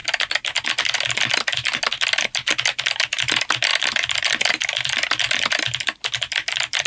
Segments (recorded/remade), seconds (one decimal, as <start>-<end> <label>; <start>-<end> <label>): 0.0-2.7 recorded; 2.7-6.9 remade